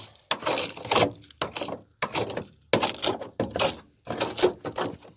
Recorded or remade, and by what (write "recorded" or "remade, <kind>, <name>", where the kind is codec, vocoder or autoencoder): recorded